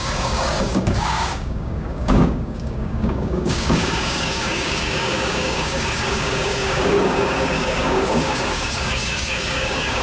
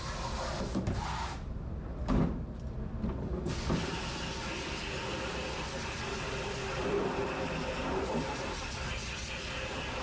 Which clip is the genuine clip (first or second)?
second